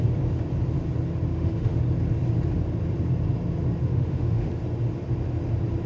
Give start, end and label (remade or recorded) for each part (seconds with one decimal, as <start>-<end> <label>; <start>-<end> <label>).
0.0-1.3 recorded; 1.3-1.8 remade; 1.8-3.8 recorded; 3.8-4.5 remade; 4.5-5.9 recorded

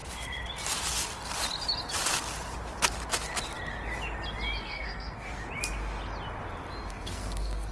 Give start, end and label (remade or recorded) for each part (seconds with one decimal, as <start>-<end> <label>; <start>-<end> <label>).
0.0-4.6 recorded; 4.6-5.4 remade; 5.4-6.9 recorded; 6.9-7.7 remade

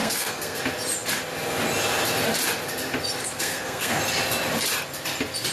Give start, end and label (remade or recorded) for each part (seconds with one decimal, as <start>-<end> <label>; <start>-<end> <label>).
0.0-0.6 remade; 0.6-3.2 recorded; 3.2-4.0 remade; 4.0-5.5 recorded

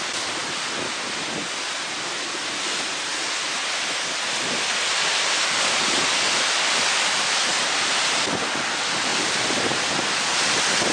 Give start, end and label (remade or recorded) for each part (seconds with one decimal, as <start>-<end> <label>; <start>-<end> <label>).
0.0-10.9 recorded

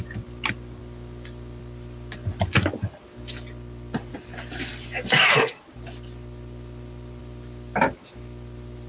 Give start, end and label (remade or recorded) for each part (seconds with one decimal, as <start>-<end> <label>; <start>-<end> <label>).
0.0-8.9 recorded